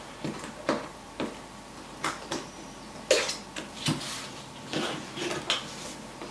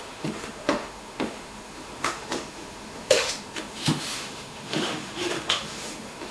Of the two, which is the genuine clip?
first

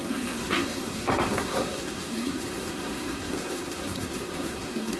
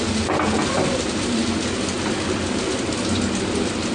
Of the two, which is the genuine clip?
second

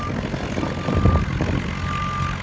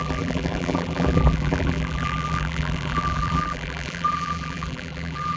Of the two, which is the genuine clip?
first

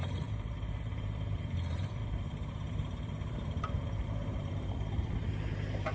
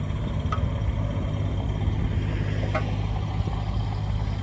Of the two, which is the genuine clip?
second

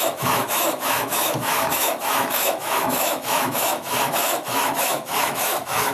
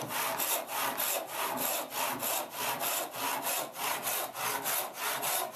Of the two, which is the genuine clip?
second